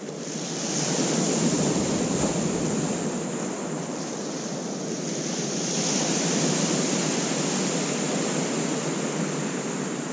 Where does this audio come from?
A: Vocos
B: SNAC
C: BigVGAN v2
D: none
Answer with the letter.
D